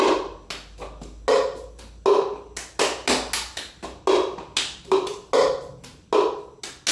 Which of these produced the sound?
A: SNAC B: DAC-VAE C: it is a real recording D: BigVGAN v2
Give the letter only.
C